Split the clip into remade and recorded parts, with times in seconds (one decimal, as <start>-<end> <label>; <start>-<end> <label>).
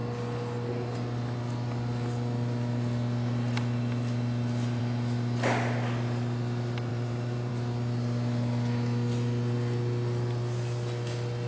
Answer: 0.0-6.9 recorded; 6.9-7.5 remade; 7.5-11.5 recorded